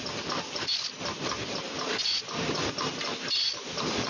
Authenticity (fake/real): real